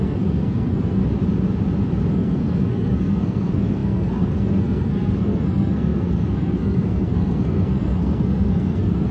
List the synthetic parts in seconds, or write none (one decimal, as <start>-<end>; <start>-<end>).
0.0-1.0; 2.1-9.1